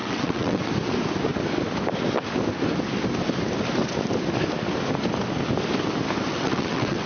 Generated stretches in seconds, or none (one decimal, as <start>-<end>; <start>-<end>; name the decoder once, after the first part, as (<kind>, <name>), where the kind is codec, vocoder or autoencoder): 0.0-0.7 (vocoder, WaveNeXt); 6.3-7.1